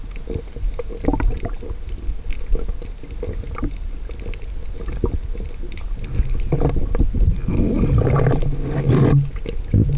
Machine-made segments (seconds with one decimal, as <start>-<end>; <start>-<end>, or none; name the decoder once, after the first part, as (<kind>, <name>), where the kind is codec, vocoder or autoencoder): none

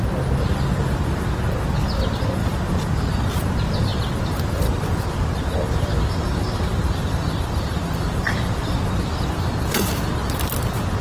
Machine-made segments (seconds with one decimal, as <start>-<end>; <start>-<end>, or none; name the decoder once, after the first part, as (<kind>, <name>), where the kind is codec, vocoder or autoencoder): 3.9-4.5 (vocoder, BigVGAN v2); 6.7-9.5

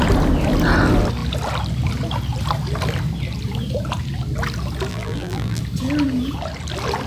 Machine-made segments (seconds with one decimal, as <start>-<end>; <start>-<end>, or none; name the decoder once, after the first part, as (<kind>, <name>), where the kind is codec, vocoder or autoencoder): 4.9-5.6 (vocoder, BigVGAN v2)

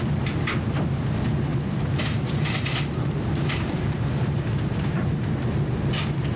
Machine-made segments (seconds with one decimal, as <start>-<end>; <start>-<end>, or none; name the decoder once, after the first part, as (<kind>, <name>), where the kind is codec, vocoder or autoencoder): 1.5-5.3 (vocoder, BigVGAN v2)

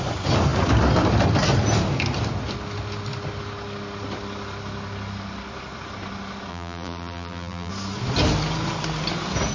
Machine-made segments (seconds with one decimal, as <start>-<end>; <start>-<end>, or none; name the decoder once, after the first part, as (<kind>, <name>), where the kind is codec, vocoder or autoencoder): 6.5-7.7 (vocoder, BigVGAN v2)

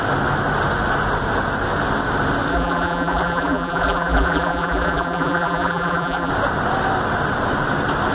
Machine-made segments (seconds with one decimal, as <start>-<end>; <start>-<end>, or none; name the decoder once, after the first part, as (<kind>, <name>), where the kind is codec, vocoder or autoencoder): 2.5-6.3 (vocoder, BigVGAN v2)

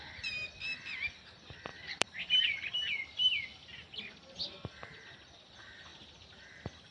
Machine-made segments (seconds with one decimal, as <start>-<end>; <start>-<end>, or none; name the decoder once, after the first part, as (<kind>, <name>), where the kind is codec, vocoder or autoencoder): 1.7-2.3 (vocoder, BigVGAN v2); 5.9-6.5